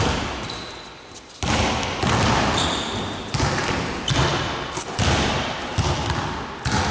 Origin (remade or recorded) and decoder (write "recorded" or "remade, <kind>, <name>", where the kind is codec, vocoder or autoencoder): recorded